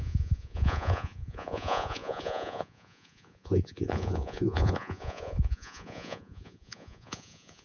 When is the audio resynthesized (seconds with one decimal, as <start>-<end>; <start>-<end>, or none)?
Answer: 0.0-7.6